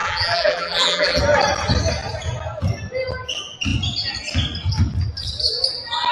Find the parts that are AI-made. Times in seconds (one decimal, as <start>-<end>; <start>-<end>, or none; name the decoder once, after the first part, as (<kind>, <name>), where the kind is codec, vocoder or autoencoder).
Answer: 0.0-1.2 (vocoder, BigVGAN v2)